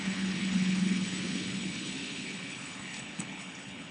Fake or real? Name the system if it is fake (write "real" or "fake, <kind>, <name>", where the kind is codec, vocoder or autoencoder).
fake, codec, HILCodec